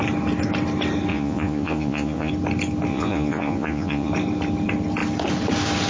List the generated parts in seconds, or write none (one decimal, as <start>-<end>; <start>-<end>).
1.1-2.3; 2.9-4.1